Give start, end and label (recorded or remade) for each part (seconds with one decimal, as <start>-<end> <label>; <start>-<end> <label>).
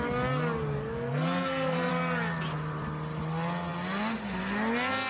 0.0-1.1 recorded; 1.1-1.9 remade; 1.9-5.1 recorded